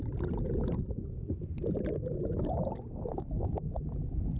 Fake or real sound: real